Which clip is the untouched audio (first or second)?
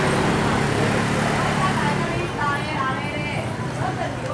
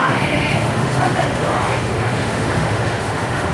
first